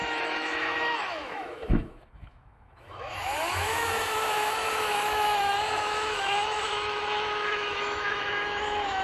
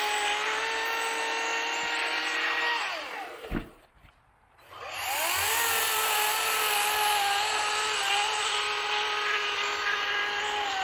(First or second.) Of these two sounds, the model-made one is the first